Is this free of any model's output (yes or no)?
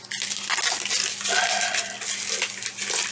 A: yes